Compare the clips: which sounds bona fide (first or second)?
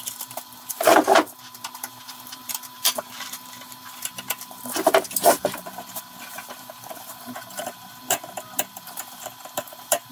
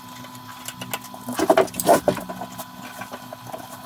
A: second